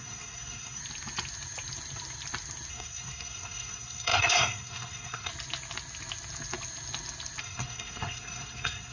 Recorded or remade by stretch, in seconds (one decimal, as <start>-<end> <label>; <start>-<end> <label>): 0.0-0.8 remade; 0.8-2.7 recorded; 2.7-5.3 remade; 5.3-7.4 recorded; 7.4-8.9 remade

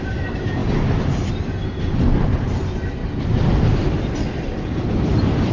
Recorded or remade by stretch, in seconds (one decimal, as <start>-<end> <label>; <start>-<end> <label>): 0.0-0.6 remade; 0.6-1.3 recorded; 1.3-5.5 remade